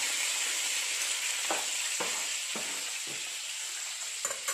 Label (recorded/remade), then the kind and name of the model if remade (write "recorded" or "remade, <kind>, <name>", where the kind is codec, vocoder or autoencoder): recorded